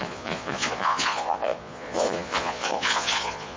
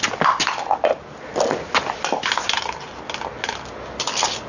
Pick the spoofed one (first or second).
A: first